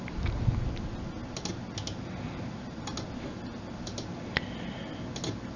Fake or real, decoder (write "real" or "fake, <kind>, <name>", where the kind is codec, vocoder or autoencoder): real